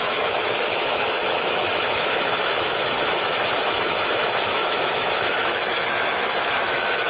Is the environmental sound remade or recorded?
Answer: remade